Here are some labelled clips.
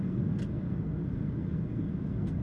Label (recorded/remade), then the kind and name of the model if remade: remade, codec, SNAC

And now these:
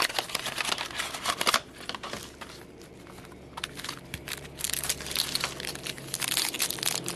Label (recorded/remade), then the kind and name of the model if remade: recorded